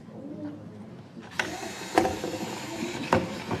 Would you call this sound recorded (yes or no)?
yes